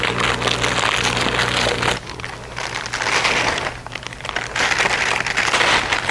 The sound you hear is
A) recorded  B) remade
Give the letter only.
A